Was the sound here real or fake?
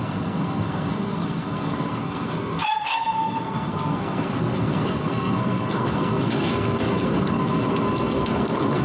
fake